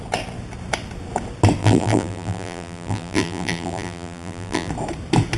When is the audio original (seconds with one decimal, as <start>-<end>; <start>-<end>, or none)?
0.0-1.6; 4.7-5.4